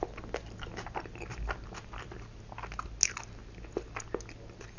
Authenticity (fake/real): real